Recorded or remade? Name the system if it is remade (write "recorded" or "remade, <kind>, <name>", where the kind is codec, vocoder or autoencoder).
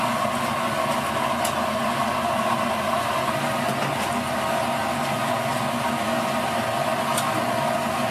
recorded